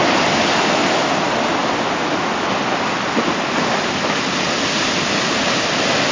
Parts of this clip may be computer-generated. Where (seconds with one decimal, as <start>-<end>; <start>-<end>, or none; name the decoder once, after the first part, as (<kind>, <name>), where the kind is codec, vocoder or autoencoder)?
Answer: none